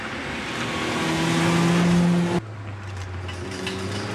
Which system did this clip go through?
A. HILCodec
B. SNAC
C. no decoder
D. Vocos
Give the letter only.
C